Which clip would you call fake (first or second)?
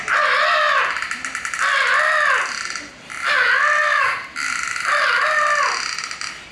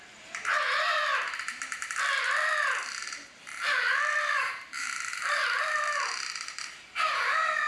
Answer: second